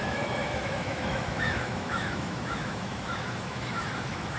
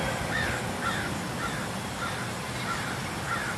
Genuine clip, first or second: second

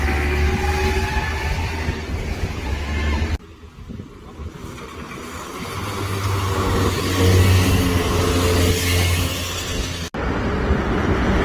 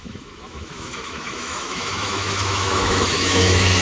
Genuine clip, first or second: first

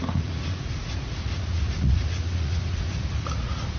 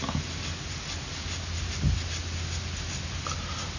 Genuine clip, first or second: second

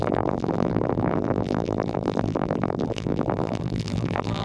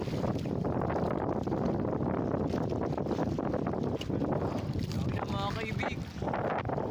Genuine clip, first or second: second